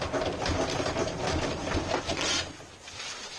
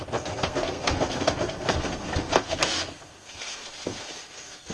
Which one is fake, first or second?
second